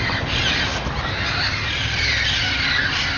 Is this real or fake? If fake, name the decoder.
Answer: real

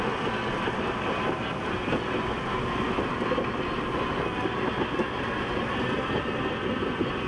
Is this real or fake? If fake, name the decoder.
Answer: real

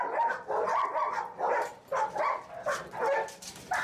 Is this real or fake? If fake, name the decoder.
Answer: real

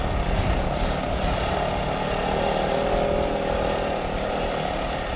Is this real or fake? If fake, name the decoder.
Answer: real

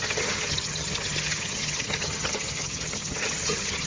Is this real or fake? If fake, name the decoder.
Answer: fake, vocoder, HiFi-GAN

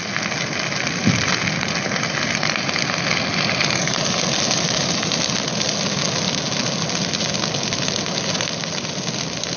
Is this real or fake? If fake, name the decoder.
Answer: real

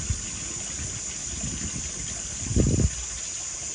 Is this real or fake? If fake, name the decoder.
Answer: real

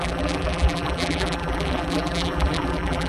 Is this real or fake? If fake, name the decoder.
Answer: fake, vocoder, BigVGAN v2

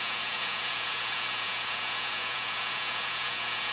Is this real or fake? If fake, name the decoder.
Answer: fake, vocoder, Vocos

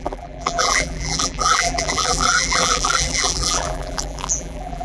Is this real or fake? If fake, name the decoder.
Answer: fake, vocoder, BigVGAN v2